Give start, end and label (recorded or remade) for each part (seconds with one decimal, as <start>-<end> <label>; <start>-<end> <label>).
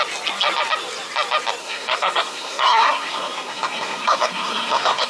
0.0-1.6 recorded; 1.6-5.1 remade